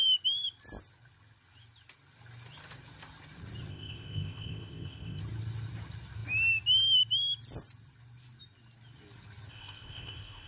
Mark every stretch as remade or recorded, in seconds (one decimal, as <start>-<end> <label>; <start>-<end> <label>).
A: 0.0-3.7 recorded; 3.7-5.2 remade; 5.2-9.5 recorded; 9.5-10.5 remade